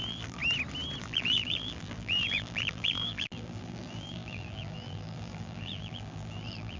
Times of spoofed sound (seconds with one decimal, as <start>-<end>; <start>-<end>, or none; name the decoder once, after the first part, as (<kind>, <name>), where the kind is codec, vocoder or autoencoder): 0.0-0.4 (vocoder, BigVGAN v2); 1.0-6.8